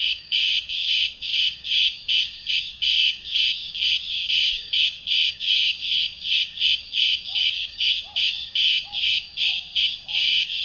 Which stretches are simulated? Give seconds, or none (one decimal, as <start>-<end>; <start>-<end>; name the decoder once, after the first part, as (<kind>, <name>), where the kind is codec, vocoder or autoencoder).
0.0-10.6 (codec, DAC)